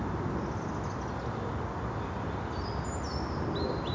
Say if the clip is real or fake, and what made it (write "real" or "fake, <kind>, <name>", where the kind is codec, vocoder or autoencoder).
real